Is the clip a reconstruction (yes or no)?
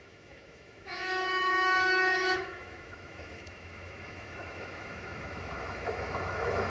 yes